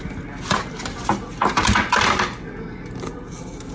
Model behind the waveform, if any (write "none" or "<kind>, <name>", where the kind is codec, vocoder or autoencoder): none